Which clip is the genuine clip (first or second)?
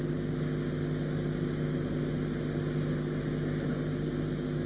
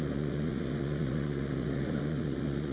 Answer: first